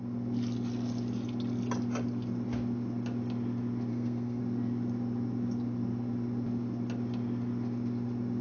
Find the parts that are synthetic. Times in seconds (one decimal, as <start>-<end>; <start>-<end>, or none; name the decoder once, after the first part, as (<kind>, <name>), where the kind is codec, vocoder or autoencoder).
3.9-4.4 (codec, SNAC)